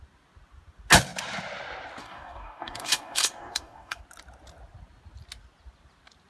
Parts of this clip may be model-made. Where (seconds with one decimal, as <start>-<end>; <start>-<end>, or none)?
2.0-4.0